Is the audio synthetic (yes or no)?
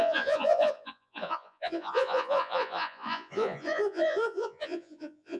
yes